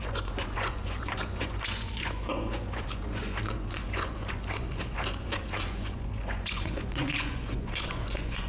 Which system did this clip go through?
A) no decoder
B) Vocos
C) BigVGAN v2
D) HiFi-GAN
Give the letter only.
B